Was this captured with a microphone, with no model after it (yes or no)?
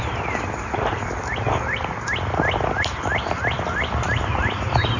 no